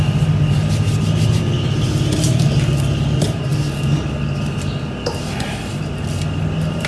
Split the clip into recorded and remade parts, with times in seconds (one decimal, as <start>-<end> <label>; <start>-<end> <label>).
0.0-6.9 recorded